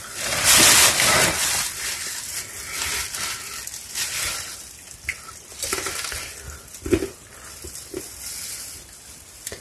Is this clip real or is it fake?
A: real